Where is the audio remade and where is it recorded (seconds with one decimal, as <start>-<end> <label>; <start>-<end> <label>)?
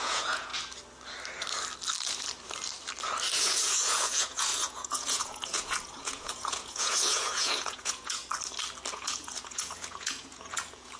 0.0-0.5 remade; 0.5-3.4 recorded; 3.4-8.2 remade; 8.2-8.9 recorded; 8.9-11.0 remade